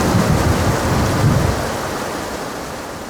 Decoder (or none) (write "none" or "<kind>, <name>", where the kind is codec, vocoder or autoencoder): none